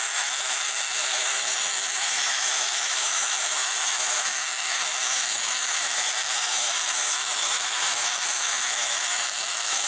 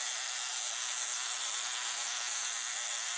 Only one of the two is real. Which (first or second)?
second